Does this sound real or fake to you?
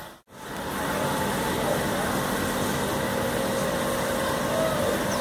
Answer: real